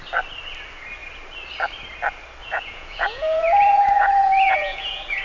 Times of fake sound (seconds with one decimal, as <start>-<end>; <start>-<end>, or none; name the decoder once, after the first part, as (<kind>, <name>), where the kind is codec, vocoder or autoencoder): 2.4-5.2 (vocoder, Vocos)